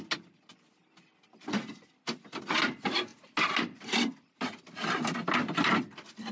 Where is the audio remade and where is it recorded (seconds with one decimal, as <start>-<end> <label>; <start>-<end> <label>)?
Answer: 0.0-6.3 recorded